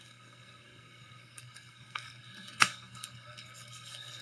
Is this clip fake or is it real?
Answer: fake